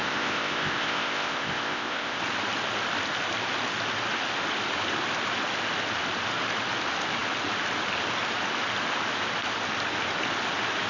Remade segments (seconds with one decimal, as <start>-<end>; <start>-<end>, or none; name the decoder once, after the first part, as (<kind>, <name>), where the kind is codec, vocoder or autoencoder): 0.0-2.2 (codec, ZipCodec)